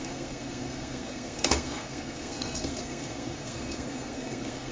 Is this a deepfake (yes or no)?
yes